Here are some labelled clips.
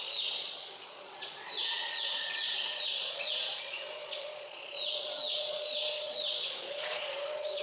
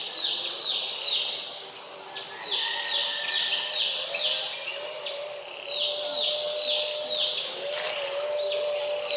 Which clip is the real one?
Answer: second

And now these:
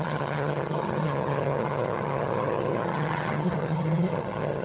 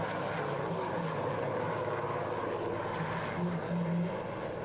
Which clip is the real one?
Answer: second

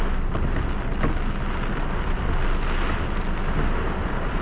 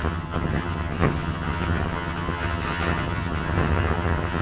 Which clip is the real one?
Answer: first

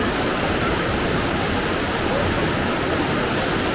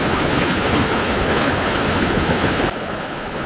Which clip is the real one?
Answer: first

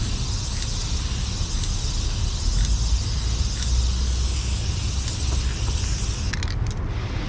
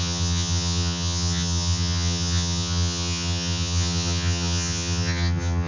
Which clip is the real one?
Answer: first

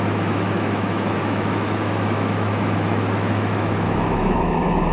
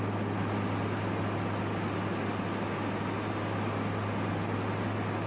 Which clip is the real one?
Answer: second